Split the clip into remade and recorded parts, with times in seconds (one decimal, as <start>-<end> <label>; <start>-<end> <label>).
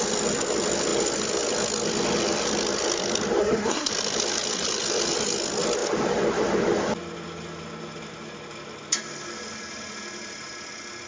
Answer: 0.0-3.4 recorded; 3.4-3.9 remade; 3.9-11.1 recorded